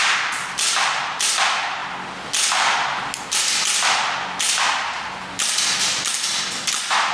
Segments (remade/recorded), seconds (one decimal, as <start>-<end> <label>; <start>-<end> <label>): 0.0-7.1 recorded